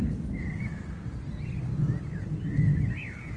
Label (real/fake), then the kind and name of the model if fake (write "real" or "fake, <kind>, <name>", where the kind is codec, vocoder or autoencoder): real